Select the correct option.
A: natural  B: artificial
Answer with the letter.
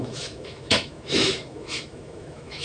B